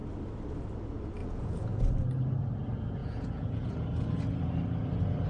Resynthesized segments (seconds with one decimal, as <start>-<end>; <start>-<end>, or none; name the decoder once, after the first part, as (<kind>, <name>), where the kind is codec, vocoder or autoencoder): 1.2-1.9 (vocoder, Vocos); 3.0-3.7